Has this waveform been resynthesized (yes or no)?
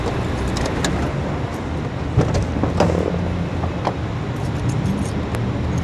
no